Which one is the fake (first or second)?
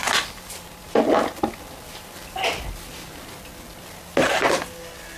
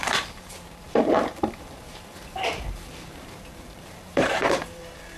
second